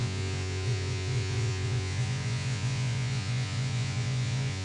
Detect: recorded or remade remade